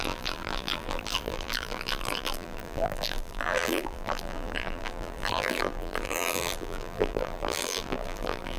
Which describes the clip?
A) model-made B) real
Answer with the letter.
A